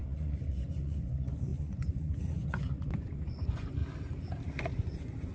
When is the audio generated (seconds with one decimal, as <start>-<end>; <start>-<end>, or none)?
0.0-3.8; 4.6-5.3